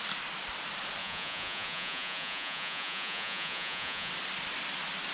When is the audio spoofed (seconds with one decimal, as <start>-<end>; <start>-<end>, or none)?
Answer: 1.0-4.1